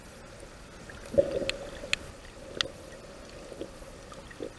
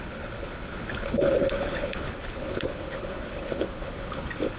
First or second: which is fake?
second